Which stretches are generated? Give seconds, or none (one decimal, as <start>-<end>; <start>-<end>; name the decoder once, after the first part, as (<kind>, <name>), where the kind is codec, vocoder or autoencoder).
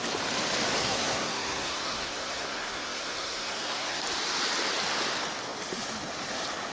0.8-4.0 (codec, SNAC)